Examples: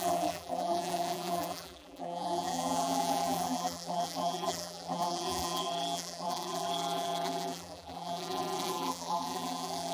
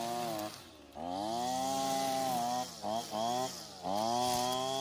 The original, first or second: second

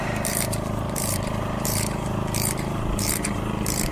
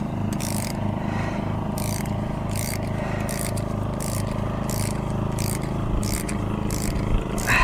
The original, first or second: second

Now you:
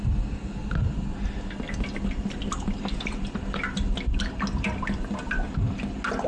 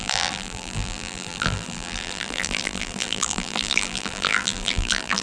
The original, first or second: first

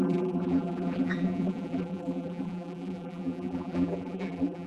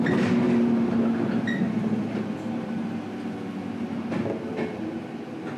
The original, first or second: second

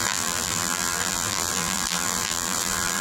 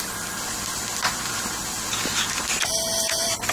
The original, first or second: second